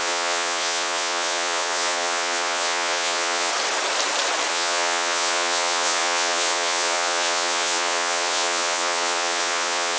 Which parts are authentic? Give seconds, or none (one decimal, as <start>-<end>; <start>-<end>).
3.5-4.5